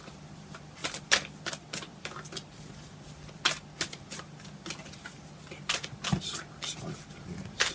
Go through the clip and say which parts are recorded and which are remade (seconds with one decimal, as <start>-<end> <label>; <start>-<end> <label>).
0.0-7.7 recorded